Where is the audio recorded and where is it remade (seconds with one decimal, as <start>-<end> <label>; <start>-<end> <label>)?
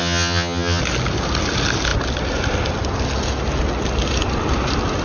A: 0.0-0.8 remade; 0.8-5.0 recorded